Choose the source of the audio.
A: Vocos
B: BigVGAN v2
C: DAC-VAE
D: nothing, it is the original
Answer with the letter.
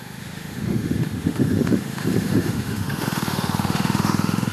C